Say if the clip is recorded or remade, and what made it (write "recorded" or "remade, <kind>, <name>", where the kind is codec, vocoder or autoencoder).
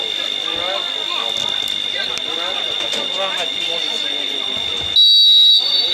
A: recorded